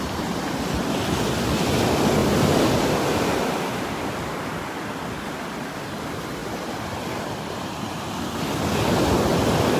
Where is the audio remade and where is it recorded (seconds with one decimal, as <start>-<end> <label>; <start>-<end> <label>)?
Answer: 0.0-6.4 recorded; 6.4-8.3 remade; 8.3-9.8 recorded